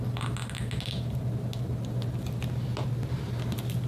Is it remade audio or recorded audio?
recorded